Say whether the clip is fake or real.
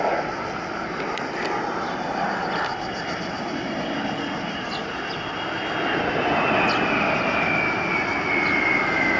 real